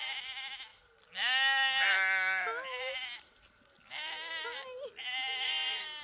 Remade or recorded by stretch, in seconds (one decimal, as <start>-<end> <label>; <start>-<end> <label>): 0.0-6.0 recorded